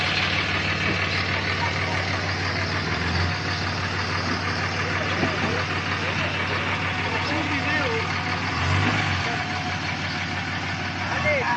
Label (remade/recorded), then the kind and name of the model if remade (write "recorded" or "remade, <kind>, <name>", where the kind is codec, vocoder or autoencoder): recorded